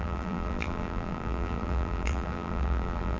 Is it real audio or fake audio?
fake